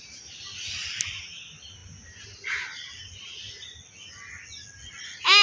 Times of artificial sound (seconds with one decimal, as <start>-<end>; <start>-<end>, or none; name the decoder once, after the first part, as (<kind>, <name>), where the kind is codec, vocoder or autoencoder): none